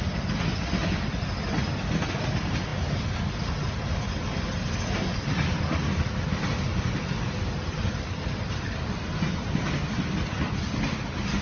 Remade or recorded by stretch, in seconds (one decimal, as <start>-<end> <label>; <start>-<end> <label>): 0.0-11.4 recorded

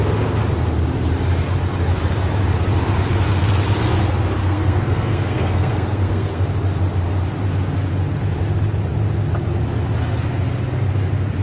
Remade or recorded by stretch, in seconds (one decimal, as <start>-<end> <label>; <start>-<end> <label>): 0.0-4.4 recorded; 4.4-6.4 remade; 6.4-11.4 recorded

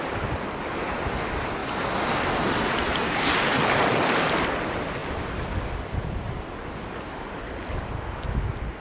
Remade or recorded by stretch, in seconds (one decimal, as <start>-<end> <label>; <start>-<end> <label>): 0.0-8.8 recorded

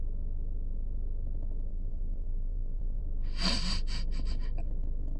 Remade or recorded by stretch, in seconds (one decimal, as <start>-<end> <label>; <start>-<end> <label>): 0.0-1.7 recorded; 1.7-3.0 remade; 3.0-5.2 recorded